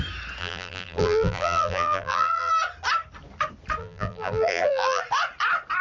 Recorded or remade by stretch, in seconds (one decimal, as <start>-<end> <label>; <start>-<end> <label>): 0.0-0.4 recorded; 0.4-2.5 remade; 2.5-3.8 recorded; 3.8-5.0 remade; 5.0-5.8 recorded